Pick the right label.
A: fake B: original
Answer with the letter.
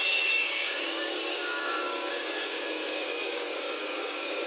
A